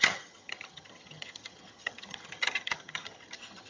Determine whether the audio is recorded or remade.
remade